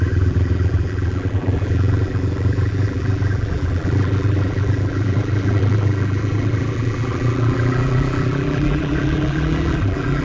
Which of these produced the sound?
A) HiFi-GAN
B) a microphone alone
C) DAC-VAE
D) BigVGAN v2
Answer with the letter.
D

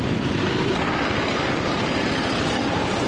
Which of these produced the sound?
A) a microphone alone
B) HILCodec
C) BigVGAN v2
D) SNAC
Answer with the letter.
A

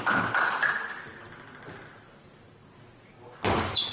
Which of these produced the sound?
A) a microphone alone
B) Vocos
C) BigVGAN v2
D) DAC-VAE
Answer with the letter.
A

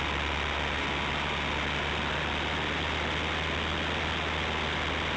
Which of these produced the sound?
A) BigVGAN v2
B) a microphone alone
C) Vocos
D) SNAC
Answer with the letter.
B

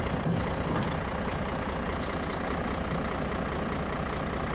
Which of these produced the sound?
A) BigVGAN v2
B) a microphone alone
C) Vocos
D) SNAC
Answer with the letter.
B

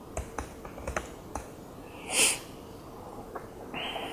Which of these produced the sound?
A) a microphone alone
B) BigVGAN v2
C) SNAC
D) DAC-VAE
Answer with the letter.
A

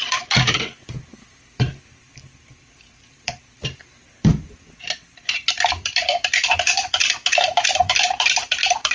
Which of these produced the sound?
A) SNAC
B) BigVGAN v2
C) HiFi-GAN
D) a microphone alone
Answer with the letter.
B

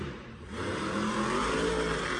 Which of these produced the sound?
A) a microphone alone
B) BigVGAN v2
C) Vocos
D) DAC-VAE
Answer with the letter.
B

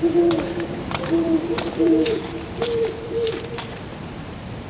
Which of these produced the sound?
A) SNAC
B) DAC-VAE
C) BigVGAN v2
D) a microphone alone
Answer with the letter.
C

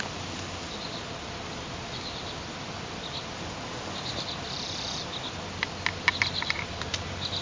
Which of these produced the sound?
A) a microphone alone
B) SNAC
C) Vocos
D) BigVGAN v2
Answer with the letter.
A